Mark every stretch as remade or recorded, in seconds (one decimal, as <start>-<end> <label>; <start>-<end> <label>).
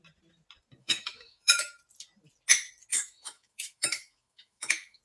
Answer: 0.0-0.8 recorded; 0.8-1.8 remade; 1.8-2.9 recorded; 2.9-5.0 remade